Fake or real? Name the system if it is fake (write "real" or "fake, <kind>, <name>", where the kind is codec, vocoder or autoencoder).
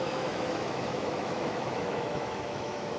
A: fake, autoencoder, DAC-VAE